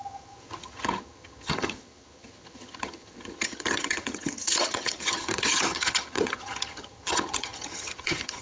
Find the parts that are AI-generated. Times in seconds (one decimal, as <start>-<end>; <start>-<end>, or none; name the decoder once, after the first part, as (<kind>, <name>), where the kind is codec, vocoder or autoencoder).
0.0-8.4 (vocoder, HiFi-GAN)